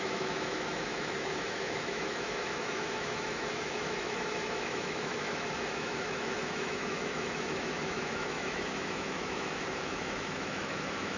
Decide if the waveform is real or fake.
fake